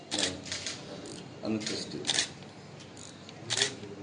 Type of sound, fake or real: real